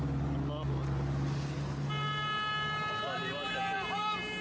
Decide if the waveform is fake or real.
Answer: real